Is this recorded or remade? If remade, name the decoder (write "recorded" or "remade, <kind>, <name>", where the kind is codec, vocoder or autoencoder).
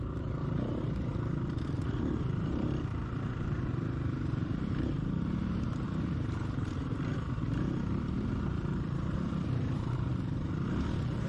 remade, vocoder, BigVGAN v2